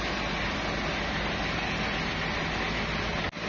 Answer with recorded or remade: recorded